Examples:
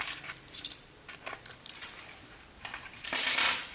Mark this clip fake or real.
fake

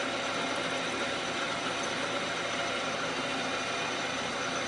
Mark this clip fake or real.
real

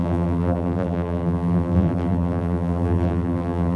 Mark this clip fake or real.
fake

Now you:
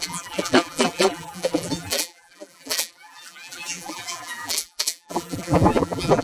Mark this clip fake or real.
fake